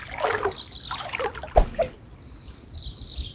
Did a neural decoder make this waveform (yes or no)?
no